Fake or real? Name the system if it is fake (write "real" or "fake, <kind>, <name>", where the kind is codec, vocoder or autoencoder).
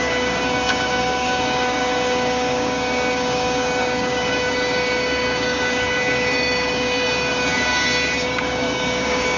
fake, codec, DAC